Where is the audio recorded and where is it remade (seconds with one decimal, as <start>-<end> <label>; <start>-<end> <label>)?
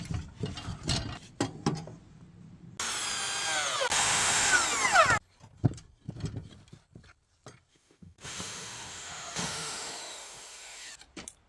0.0-3.9 recorded; 3.9-4.5 remade; 4.5-7.7 recorded; 7.7-10.9 remade; 10.9-11.5 recorded